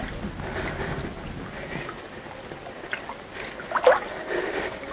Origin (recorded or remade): recorded